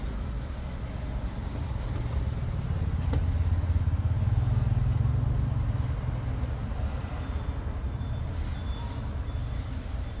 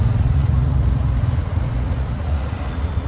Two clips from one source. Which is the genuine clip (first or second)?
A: first